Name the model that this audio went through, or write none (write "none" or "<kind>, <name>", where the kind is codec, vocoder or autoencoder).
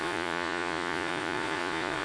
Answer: vocoder, Vocos